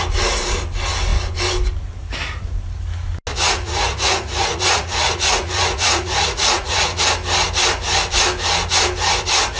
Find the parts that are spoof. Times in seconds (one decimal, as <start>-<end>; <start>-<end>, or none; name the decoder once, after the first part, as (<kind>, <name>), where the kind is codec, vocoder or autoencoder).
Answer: 3.3-7.0 (vocoder, Vocos)